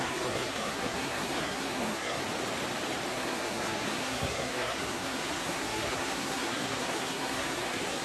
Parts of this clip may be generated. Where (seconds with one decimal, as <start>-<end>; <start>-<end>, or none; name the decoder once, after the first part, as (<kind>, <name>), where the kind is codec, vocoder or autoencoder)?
0.0-2.2 (codec, SNAC); 3.1-8.0